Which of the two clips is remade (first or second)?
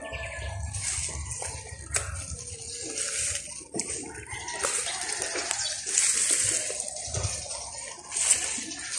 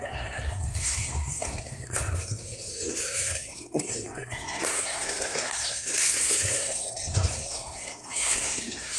second